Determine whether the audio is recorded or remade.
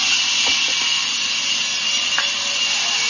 recorded